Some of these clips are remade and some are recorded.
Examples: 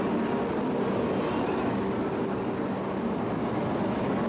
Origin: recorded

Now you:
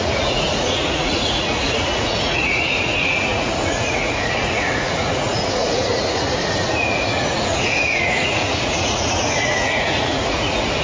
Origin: remade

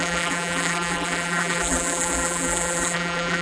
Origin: remade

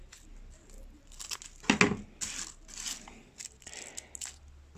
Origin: recorded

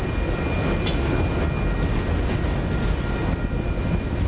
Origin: recorded